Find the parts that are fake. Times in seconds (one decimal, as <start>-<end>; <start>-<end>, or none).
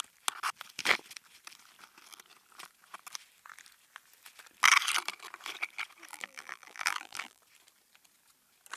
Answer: 6.1-7.4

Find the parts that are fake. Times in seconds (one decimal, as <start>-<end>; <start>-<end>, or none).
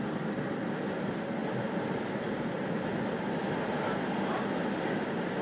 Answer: none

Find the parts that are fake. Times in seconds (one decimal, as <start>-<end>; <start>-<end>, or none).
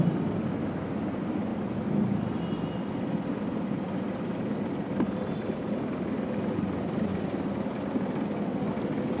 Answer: none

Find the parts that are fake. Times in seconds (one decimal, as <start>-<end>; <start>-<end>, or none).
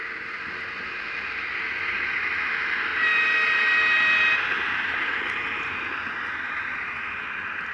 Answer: 2.9-6.6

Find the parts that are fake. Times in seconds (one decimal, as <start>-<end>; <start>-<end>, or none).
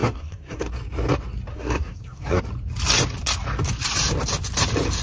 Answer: 0.0-0.7; 1.5-2.4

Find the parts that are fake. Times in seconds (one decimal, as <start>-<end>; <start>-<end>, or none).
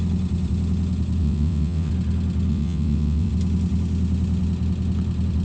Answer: 1.2-1.9; 2.5-3.3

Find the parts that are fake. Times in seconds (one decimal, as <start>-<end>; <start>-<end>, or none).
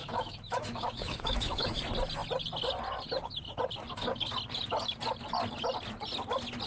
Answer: 0.0-1.8